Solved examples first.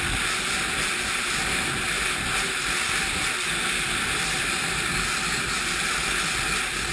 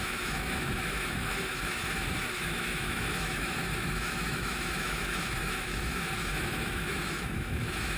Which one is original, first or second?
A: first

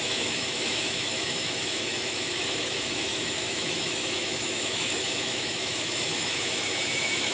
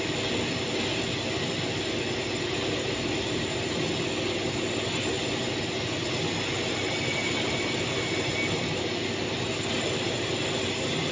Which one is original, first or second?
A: second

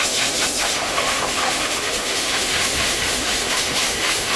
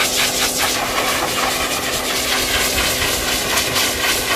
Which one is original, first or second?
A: second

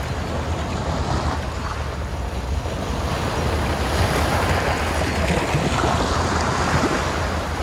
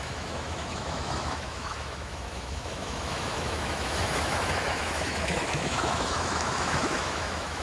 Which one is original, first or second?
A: first